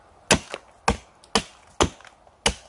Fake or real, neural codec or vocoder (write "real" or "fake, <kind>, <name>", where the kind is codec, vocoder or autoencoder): real